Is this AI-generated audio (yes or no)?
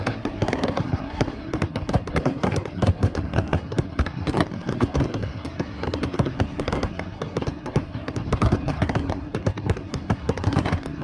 yes